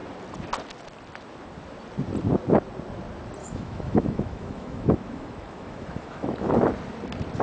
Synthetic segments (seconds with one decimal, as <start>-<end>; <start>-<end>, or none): 3.4-6.7